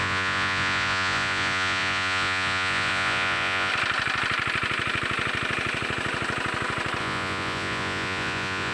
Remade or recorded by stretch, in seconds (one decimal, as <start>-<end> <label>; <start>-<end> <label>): 0.0-3.7 remade; 3.7-7.0 recorded; 7.0-8.7 remade